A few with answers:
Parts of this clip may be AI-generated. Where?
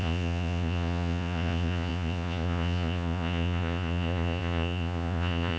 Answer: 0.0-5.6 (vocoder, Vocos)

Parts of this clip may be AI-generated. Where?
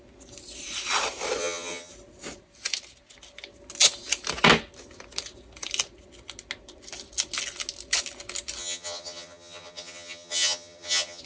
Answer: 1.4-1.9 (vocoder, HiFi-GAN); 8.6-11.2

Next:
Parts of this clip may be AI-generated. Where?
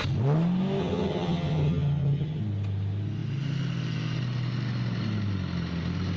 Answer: 0.8-2.4 (vocoder, HiFi-GAN)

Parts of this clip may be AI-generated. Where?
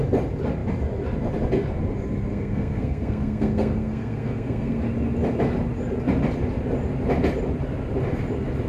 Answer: 2.3-4.8 (codec, SNAC)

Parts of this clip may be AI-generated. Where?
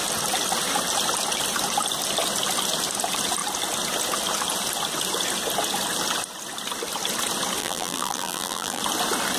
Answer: 7.6-8.8 (vocoder, BigVGAN v2)